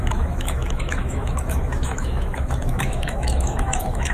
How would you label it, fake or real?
fake